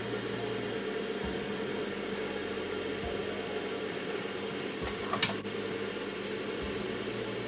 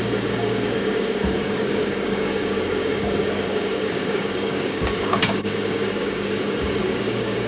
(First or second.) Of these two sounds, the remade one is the second